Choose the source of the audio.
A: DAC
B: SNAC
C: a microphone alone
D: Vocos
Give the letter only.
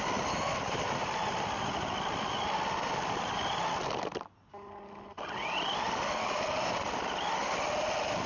C